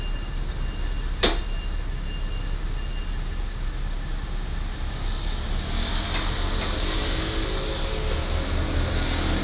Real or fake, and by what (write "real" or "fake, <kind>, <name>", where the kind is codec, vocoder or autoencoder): real